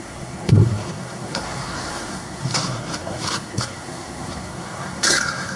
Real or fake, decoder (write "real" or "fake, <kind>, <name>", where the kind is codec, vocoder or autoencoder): fake, codec, SNAC